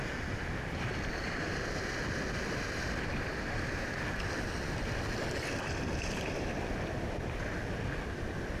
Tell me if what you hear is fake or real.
real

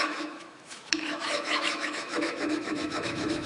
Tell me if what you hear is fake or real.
fake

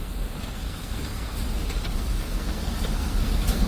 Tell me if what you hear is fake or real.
fake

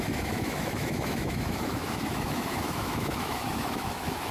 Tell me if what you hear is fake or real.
fake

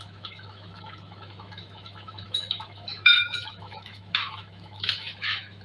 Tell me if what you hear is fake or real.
fake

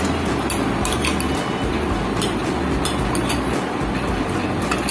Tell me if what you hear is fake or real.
real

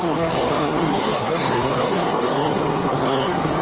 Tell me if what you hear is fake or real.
fake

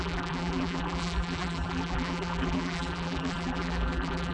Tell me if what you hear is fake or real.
fake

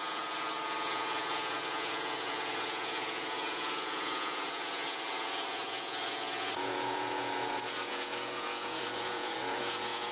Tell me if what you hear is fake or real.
fake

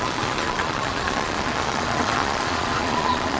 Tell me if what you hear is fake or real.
fake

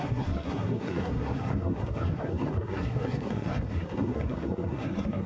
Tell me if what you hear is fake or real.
fake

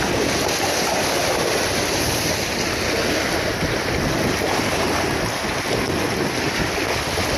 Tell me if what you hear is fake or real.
real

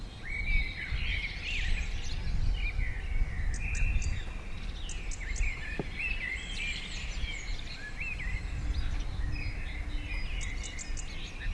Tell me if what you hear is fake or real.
real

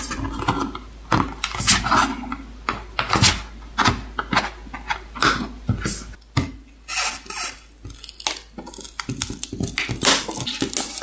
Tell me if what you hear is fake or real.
real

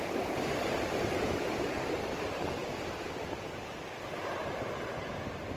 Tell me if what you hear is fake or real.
real